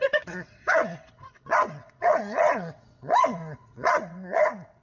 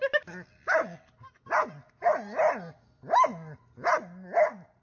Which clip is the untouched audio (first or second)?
second